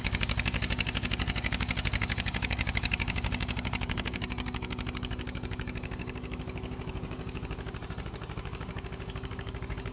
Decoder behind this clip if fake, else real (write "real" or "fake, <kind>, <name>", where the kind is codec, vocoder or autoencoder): fake, codec, DAC